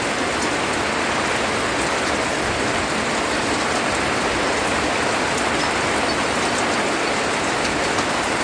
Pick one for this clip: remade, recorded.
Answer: recorded